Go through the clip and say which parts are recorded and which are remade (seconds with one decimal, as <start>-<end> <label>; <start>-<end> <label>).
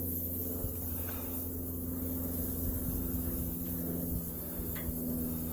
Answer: 0.0-5.5 recorded